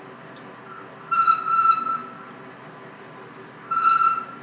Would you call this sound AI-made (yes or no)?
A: no